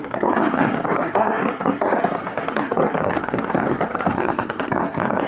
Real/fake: fake